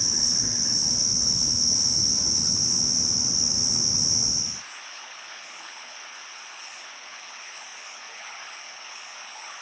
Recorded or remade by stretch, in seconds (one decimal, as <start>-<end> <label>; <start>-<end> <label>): 0.0-2.6 remade; 2.6-4.7 recorded; 4.7-9.6 remade

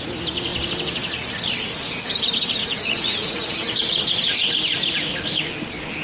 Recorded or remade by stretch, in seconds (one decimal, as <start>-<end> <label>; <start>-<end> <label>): 0.0-2.6 recorded; 2.6-3.5 remade; 3.5-6.0 recorded

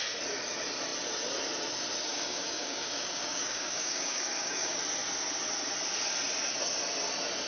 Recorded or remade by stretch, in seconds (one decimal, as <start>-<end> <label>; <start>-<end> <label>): 0.0-2.1 recorded; 2.1-4.8 remade; 4.8-7.5 recorded

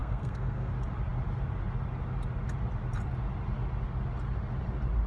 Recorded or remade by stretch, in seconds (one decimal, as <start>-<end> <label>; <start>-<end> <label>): 0.0-0.7 remade; 0.7-5.1 recorded

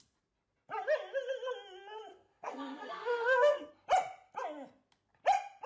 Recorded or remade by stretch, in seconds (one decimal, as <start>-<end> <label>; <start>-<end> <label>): 0.0-2.1 recorded; 2.1-3.7 remade; 3.7-5.7 recorded

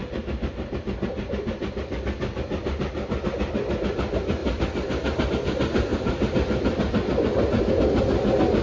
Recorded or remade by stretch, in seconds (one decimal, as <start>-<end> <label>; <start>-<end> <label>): 0.0-8.6 recorded